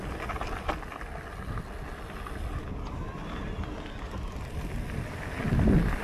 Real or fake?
real